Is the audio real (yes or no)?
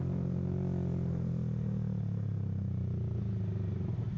yes